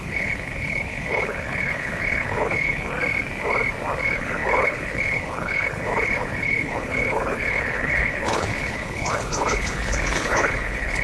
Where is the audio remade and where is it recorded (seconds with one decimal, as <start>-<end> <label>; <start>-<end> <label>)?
0.0-2.9 remade; 2.9-4.0 recorded; 4.0-11.0 remade